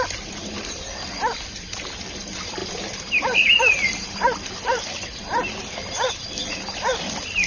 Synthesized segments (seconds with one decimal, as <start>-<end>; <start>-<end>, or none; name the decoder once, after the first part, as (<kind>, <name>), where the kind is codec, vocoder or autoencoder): 0.0-2.6 (vocoder, BigVGAN v2); 3.6-7.5